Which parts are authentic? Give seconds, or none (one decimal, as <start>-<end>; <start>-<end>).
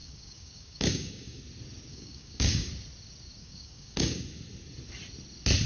1.4-1.9; 2.7-3.4; 4.2-5.7